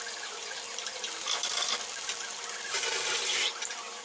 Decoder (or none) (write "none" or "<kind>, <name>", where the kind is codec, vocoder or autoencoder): none